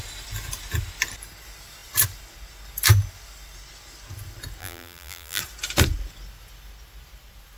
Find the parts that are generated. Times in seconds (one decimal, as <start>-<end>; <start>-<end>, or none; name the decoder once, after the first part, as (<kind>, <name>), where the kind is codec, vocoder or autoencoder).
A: 4.6-5.4 (vocoder, BigVGAN v2)

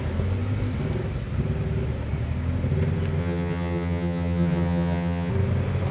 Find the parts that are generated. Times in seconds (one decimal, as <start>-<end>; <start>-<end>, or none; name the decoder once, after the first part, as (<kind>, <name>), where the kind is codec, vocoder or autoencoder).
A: 3.2-5.3 (vocoder, HiFi-GAN)

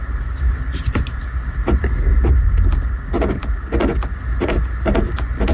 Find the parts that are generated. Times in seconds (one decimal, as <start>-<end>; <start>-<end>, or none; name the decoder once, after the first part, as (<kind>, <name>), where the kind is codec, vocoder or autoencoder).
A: none